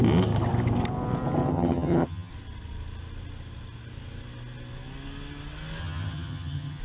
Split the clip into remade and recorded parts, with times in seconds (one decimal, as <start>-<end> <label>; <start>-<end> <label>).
0.0-1.5 recorded; 1.5-2.3 remade; 2.3-5.8 recorded; 5.8-6.8 remade